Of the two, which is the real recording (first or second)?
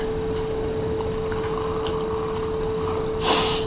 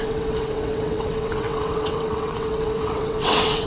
first